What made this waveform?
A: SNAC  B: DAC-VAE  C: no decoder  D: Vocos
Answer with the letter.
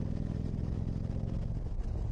C